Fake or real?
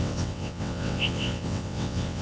fake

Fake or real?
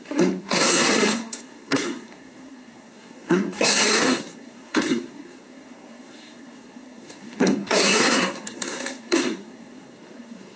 fake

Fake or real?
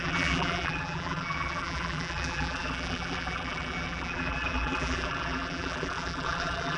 fake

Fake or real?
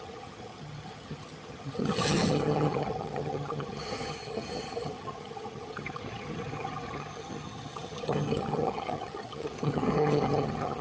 fake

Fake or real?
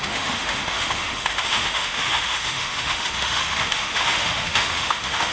fake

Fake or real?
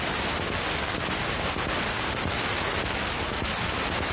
real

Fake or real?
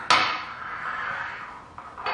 real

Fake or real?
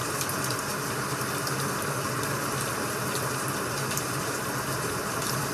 real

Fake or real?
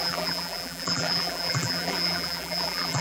fake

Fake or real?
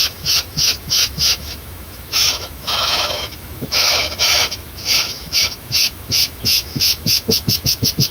fake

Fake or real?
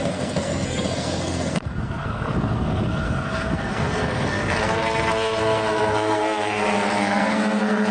fake